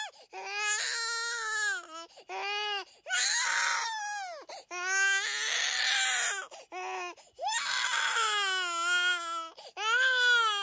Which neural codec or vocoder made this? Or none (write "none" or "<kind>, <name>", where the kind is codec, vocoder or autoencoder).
none